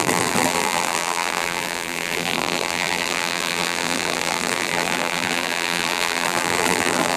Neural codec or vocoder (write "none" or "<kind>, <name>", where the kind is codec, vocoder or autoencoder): vocoder, BigVGAN v2